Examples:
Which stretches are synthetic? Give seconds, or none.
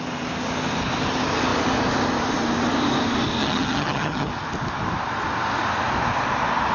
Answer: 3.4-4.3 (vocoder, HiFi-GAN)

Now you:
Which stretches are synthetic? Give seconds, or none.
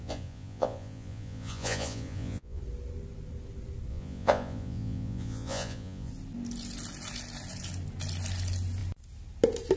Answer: 0.0-2.6 (vocoder, Vocos); 3.9-6.1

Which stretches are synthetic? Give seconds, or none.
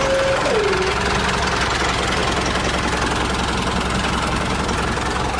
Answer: none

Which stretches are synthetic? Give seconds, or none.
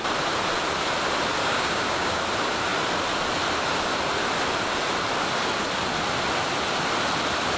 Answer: 1.4-2.2 (codec, DAC)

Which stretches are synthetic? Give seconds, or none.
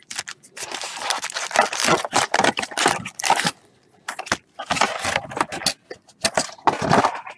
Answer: 1.8-4.5 (vocoder, BigVGAN v2)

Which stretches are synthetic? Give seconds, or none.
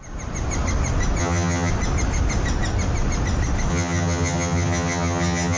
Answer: 1.2-1.7 (vocoder, HiFi-GAN); 3.7-5.6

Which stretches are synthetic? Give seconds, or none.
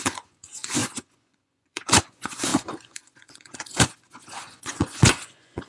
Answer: 0.0-5.7 (vocoder, Vocos)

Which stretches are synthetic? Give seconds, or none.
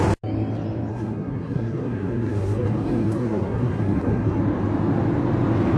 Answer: 0.9-4.4 (codec, SNAC)